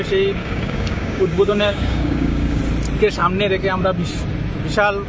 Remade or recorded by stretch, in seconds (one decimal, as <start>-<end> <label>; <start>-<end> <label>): 0.0-0.4 recorded; 0.4-2.6 remade; 2.6-5.1 recorded